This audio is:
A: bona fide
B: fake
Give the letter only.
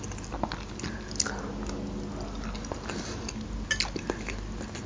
A